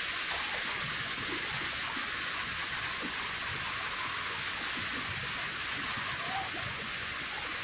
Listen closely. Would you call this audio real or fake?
fake